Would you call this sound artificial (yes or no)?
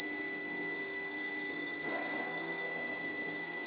yes